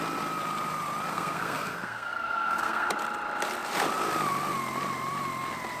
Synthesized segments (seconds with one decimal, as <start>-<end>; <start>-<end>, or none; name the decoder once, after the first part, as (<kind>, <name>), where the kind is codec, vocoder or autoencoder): 1.1-2.9 (codec, SNAC)